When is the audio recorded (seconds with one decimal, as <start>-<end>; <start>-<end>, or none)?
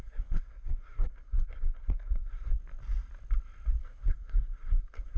2.5-3.8